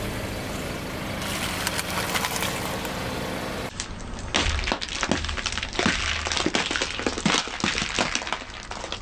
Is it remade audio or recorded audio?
recorded